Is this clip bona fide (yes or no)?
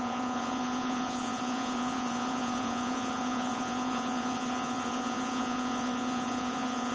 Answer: no